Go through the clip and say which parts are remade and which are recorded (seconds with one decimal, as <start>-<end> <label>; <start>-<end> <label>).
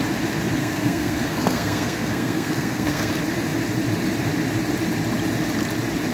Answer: 0.0-0.6 recorded; 0.6-3.1 remade; 3.1-6.1 recorded